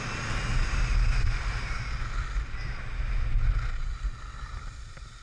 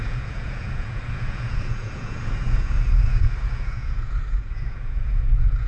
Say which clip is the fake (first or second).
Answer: second